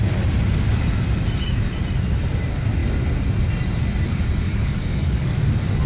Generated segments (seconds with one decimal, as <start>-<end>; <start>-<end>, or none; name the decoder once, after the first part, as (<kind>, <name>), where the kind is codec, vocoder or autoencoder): 4.5-5.5 (codec, DAC)